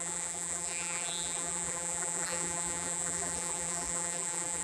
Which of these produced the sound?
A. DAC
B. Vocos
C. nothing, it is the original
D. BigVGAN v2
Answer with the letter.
D